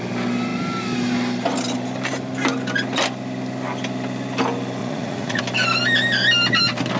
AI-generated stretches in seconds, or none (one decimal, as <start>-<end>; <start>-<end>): 4.8-5.4